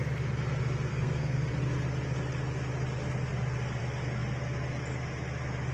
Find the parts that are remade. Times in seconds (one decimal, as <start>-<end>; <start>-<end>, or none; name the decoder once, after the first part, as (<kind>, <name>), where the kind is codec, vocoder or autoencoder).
0.9-1.5 (codec, SNAC)